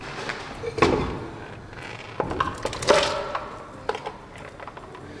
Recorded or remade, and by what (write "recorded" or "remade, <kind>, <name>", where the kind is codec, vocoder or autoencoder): recorded